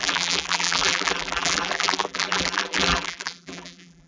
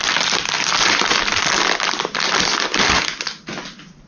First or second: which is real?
second